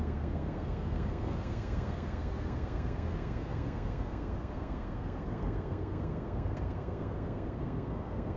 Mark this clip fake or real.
fake